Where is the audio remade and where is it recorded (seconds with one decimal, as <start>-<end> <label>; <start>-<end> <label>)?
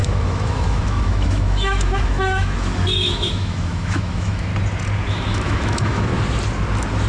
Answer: 0.0-4.5 remade; 4.5-5.1 recorded; 5.1-6.1 remade; 6.1-7.1 recorded